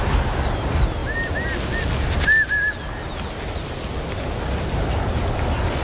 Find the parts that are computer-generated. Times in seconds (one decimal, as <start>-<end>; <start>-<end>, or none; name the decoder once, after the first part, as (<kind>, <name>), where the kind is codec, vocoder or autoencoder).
0.0-1.0 (vocoder, BigVGAN v2); 4.4-5.8